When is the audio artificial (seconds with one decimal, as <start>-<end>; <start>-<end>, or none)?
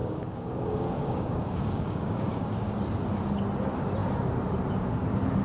0.0-2.8